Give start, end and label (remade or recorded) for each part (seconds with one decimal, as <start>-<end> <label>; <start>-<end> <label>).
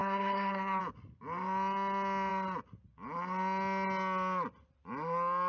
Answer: 0.0-0.8 remade; 0.8-5.5 recorded